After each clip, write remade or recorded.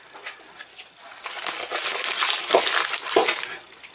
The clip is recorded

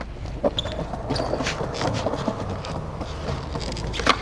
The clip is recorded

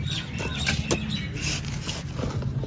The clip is recorded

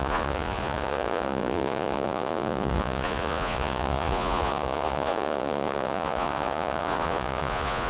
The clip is remade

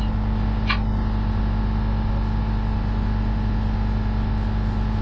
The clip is recorded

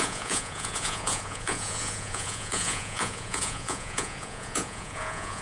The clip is remade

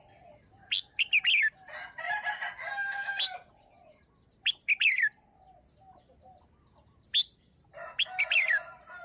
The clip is recorded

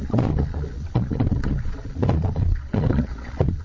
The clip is remade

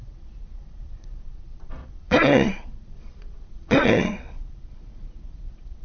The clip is remade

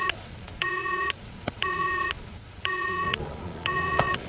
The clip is remade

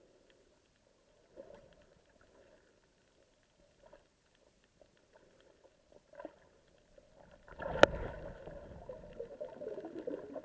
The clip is recorded